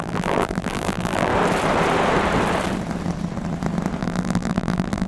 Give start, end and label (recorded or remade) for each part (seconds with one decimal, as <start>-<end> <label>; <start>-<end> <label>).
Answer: 0.0-1.3 remade; 1.3-4.0 recorded; 4.0-5.1 remade